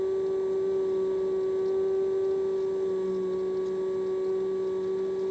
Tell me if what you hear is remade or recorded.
recorded